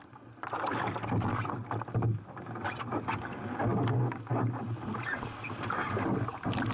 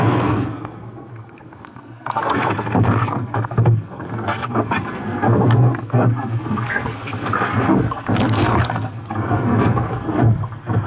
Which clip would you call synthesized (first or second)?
second